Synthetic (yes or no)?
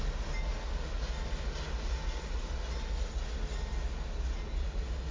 no